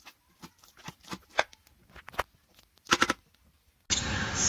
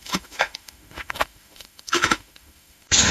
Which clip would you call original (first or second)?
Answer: first